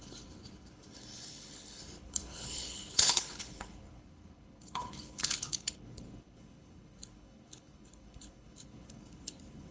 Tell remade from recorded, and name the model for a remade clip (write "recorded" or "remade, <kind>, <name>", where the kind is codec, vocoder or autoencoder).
remade, codec, HILCodec